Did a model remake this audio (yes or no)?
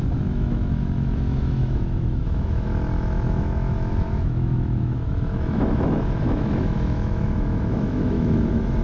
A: yes